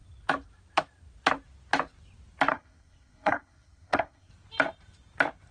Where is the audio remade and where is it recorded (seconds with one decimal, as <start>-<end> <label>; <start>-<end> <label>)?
0.0-2.5 recorded; 2.5-4.3 remade; 4.3-5.5 recorded

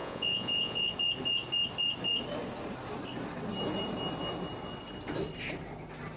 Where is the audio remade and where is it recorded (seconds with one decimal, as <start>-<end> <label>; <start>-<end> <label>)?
0.0-0.9 remade; 0.9-6.2 recorded